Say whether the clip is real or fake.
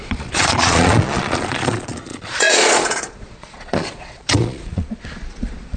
fake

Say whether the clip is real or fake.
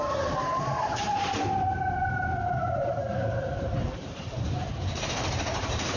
fake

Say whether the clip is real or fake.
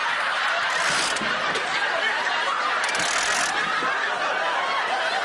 real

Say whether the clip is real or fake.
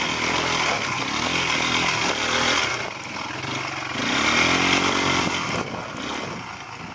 real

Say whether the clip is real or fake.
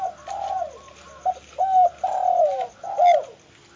real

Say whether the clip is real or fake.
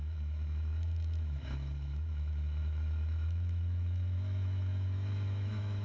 fake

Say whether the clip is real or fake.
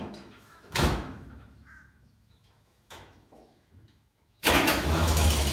fake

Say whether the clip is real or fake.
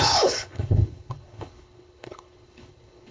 fake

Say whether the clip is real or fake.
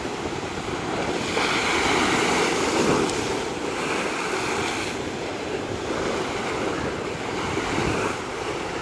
real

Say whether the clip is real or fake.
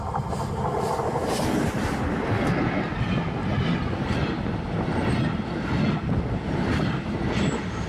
real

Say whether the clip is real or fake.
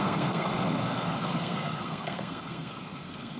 fake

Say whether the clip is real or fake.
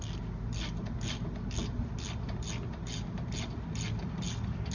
real